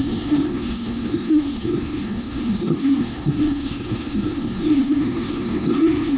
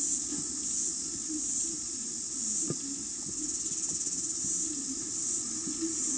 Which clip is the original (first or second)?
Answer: second